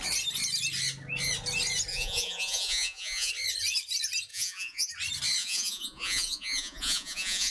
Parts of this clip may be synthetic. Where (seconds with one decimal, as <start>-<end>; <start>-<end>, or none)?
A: 1.9-3.3; 4.3-4.9; 5.4-7.5